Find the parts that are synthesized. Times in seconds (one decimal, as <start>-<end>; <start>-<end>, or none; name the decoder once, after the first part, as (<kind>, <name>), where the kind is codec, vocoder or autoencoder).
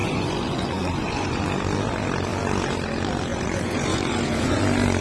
0.0-1.4 (vocoder, Vocos); 3.3-4.6